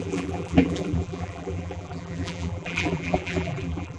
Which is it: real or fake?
fake